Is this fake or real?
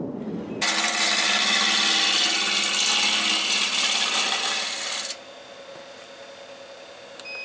real